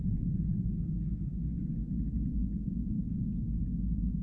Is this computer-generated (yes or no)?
no